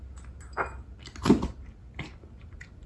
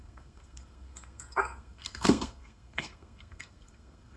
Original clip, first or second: first